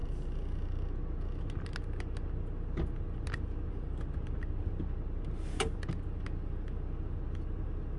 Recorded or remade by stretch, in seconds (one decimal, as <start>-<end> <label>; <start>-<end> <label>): 0.0-8.0 recorded